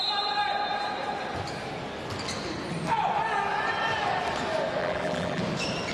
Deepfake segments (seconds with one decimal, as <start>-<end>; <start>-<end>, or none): 4.8-5.4